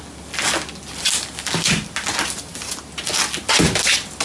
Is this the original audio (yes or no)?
yes